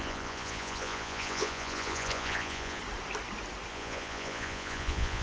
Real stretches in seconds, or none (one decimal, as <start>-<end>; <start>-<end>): 2.8-3.7